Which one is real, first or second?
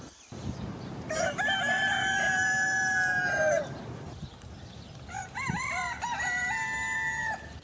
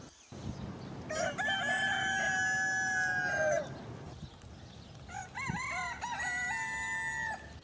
second